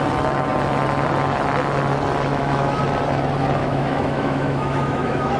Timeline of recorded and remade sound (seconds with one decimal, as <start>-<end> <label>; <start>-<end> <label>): 0.0-2.3 recorded; 2.3-2.8 remade; 2.8-3.6 recorded; 3.6-5.4 remade